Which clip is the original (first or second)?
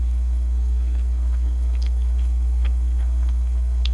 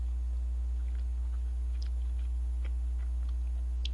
second